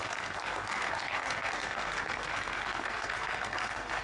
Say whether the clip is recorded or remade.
remade